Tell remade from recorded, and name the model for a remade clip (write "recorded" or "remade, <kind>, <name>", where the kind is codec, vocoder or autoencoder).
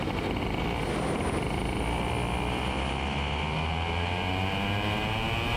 recorded